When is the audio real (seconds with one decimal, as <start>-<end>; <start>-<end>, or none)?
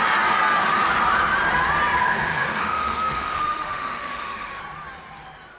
0.0-2.0; 4.6-5.6